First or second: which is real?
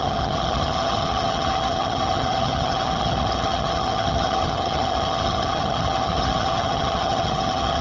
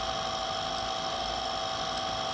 second